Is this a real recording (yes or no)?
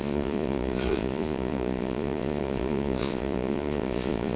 no